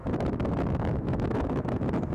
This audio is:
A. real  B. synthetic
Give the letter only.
B